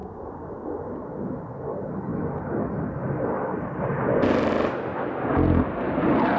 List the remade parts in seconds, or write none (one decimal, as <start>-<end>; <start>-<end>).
none